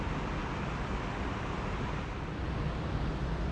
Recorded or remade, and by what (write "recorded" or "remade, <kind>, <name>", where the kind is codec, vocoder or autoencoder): recorded